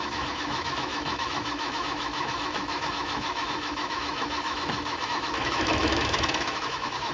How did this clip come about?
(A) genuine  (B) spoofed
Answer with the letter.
B